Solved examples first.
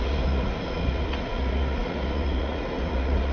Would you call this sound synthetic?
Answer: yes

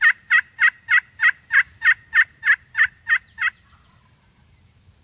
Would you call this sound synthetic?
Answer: yes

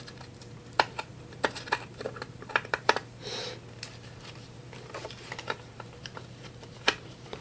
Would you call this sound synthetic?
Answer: yes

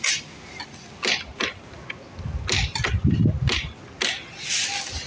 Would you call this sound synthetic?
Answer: no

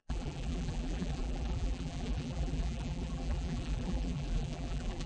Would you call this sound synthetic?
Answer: yes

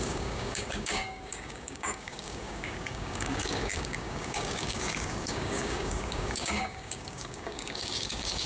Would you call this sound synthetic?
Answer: yes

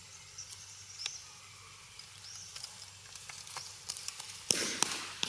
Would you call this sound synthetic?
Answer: no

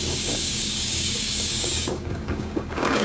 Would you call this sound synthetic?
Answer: yes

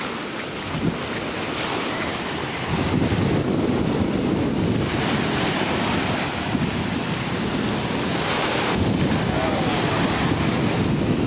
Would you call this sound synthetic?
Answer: no